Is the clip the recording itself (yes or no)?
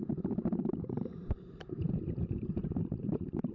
no